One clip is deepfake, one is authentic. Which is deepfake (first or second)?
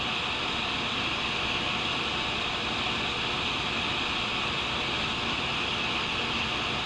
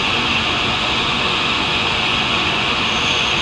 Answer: second